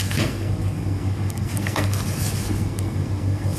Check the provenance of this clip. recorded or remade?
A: remade